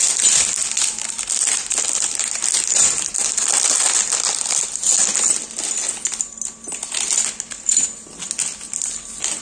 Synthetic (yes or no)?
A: no